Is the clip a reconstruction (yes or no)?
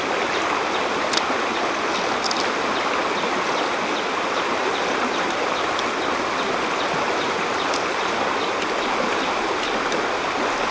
no